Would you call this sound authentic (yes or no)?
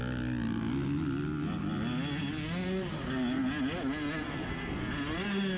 yes